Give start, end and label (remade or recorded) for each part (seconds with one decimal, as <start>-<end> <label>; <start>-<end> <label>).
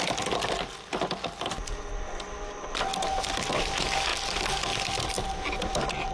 0.0-6.1 recorded